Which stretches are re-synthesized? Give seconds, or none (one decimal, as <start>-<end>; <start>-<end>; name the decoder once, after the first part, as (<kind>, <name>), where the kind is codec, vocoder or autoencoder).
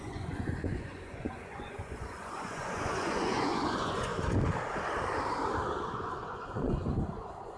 0.0-4.1 (vocoder, Vocos); 5.9-7.6